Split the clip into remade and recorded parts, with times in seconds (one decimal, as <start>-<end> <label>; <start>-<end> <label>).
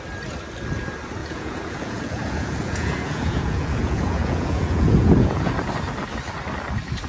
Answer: 0.0-1.2 recorded; 1.2-5.5 remade; 5.5-7.1 recorded